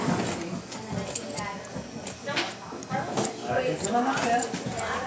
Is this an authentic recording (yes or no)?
yes